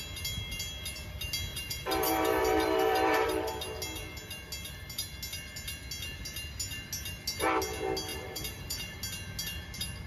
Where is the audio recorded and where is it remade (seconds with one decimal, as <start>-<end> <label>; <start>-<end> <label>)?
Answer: 0.0-1.5 recorded; 1.5-3.5 remade; 3.5-8.1 recorded; 8.1-9.0 remade; 9.0-10.1 recorded